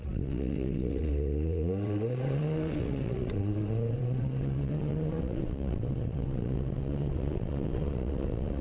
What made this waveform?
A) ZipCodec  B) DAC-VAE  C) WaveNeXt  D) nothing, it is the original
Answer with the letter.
C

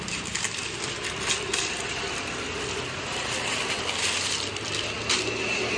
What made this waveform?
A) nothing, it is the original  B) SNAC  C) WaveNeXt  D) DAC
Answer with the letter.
A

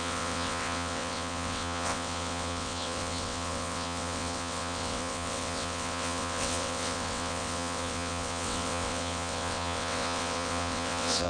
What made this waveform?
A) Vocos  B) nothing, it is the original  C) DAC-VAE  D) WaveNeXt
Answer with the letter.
D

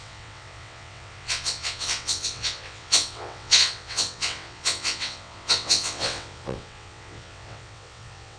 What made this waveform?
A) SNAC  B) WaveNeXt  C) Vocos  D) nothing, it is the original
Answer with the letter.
B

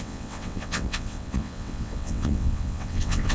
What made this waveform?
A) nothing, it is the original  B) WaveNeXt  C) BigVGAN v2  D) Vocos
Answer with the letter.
B